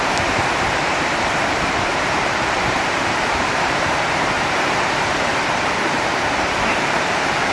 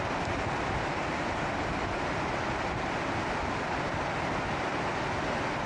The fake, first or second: first